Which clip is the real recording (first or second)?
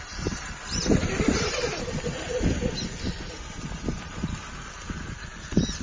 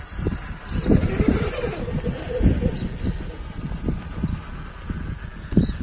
second